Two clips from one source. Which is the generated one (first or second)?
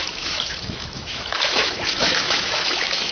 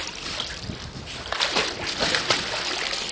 first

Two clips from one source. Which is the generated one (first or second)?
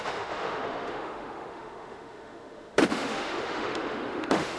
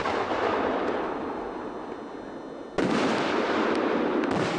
first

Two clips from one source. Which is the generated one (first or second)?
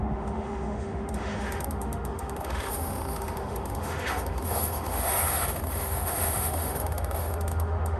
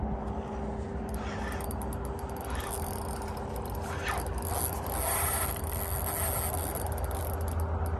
first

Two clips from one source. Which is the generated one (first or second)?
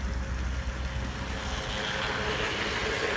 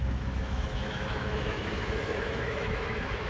second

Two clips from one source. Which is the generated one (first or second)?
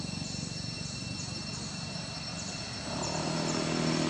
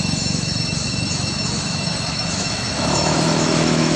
second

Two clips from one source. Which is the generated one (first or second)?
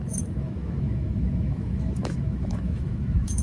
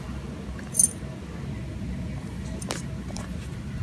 first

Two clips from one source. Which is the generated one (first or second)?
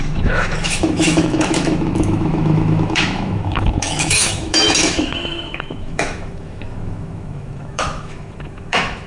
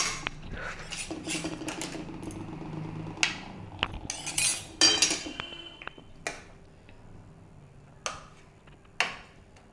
first